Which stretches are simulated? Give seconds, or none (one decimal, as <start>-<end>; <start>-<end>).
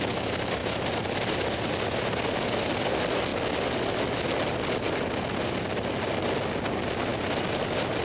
none